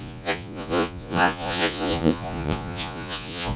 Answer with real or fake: fake